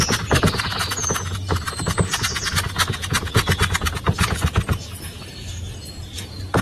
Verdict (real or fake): fake